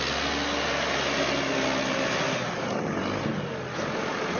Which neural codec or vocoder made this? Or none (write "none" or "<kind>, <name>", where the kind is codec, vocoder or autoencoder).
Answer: none